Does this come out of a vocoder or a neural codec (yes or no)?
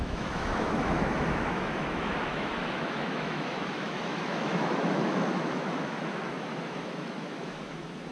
yes